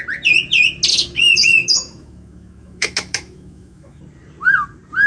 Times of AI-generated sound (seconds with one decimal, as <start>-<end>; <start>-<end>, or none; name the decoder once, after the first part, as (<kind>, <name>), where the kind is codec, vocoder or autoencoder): 0.9-4.0 (autoencoder, DAC-VAE)